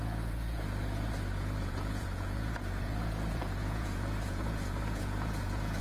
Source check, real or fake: fake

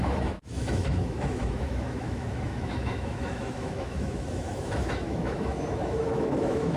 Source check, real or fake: fake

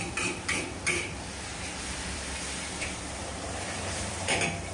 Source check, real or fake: fake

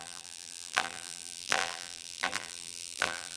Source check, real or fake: fake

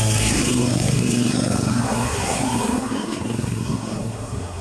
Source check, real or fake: fake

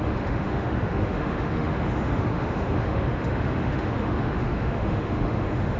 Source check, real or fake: fake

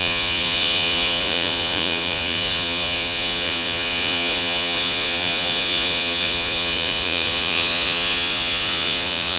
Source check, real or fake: fake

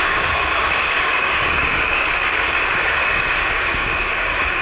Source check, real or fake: fake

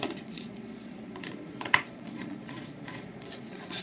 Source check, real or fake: fake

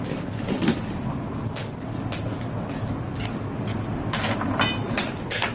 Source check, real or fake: real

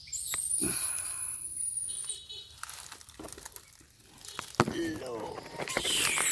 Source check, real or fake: real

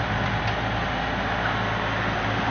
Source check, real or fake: real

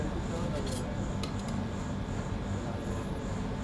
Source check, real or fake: real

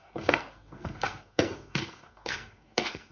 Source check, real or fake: fake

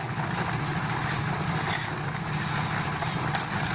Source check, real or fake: real